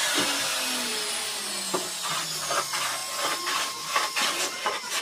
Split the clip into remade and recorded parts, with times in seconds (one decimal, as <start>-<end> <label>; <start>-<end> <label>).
0.0-5.0 recorded